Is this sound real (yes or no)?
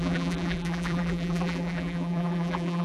no